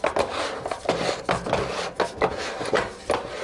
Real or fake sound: real